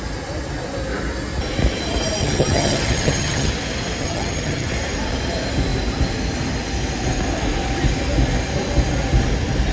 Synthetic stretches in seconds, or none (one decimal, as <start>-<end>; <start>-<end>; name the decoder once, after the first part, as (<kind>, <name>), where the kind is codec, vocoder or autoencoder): 2.2-3.5 (vocoder, HiFi-GAN); 4.0-4.7